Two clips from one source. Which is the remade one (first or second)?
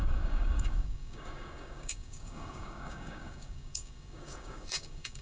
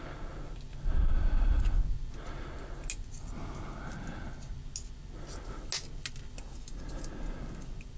first